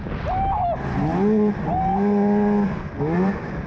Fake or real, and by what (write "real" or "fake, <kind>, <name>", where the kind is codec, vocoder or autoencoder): real